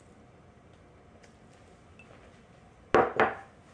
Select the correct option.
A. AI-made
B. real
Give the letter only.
B